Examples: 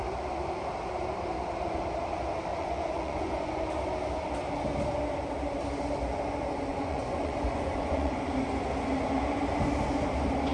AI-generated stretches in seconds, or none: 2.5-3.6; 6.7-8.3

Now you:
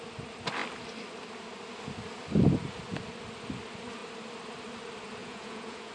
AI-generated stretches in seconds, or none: 5.2-5.9

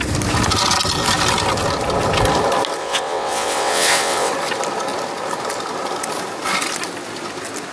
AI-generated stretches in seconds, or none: 2.8-4.3

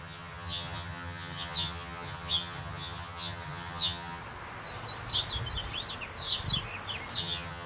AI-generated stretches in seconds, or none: 0.0-4.2; 7.2-7.7